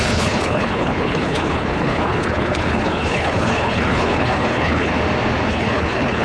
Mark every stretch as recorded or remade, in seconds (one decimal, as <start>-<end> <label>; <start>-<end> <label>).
0.0-4.9 remade; 4.9-5.5 recorded; 5.5-6.2 remade